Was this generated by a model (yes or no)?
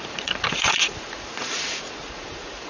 yes